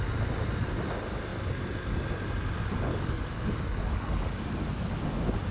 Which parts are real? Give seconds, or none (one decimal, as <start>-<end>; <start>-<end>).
0.0-2.9; 4.4-5.5